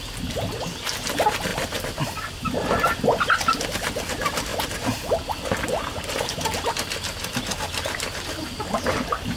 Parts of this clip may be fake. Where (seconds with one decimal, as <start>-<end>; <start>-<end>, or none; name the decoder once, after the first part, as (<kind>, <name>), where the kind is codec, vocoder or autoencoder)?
none